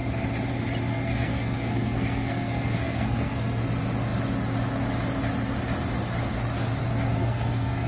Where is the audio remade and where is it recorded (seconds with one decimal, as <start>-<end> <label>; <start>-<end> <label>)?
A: 0.0-0.9 recorded; 0.9-3.6 remade; 3.6-7.2 recorded; 7.2-7.9 remade